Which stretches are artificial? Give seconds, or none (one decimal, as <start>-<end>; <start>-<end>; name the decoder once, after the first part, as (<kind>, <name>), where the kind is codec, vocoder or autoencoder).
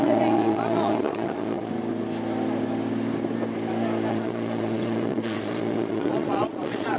0.0-1.7 (vocoder, Vocos); 4.1-7.0